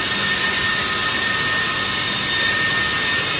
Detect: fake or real real